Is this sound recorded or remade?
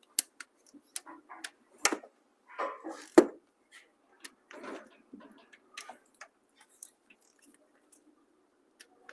recorded